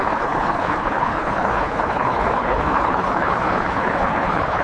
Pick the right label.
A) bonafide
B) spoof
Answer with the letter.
B